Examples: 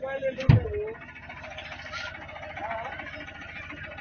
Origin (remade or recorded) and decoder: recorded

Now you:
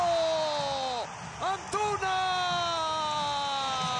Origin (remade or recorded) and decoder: recorded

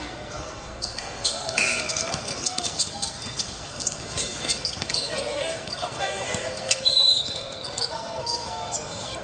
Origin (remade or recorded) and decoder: remade, codec, SNAC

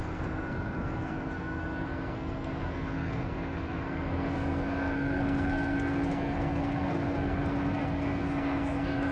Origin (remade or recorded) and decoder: remade, codec, SNAC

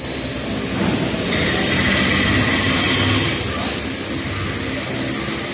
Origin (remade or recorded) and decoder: recorded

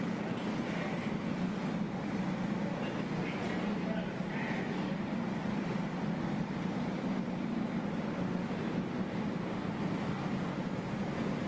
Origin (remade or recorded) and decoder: recorded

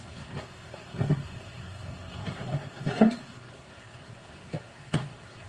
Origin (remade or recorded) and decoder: remade, codec, SNAC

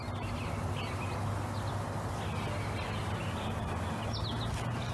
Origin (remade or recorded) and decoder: recorded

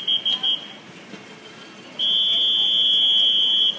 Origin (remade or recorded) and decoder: recorded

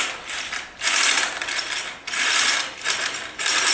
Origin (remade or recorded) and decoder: recorded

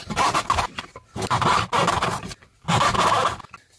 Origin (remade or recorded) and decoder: recorded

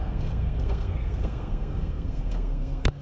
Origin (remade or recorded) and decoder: remade, codec, SNAC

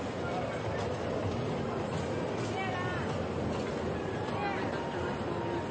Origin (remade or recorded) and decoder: recorded